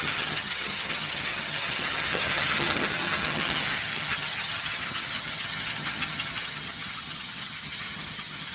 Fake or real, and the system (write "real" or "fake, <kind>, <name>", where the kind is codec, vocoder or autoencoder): fake, vocoder, HiFi-GAN